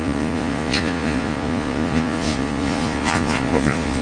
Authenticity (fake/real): fake